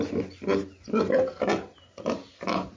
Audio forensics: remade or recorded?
recorded